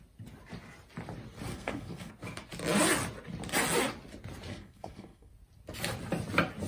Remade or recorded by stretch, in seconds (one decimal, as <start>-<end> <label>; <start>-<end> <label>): 0.0-1.5 recorded; 1.5-2.1 remade; 2.1-4.5 recorded; 4.5-5.3 remade; 5.3-6.7 recorded